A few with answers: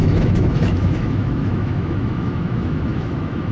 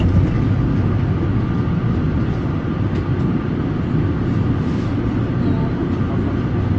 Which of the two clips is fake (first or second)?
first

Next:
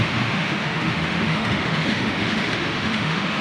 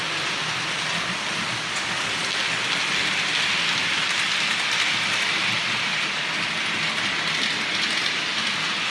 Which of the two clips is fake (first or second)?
first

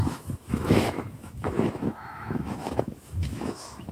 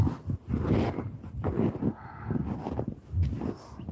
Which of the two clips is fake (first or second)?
first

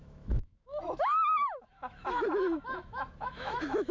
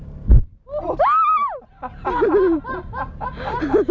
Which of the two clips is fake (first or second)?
first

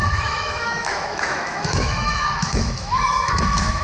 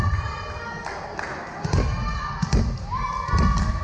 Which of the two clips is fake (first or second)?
first